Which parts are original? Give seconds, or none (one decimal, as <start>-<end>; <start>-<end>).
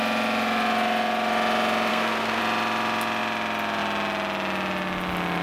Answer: 0.0-1.9; 2.4-5.4